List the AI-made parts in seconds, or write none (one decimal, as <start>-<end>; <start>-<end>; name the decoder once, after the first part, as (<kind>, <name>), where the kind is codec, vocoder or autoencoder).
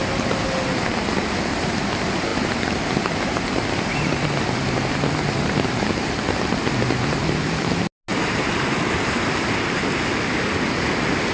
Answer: none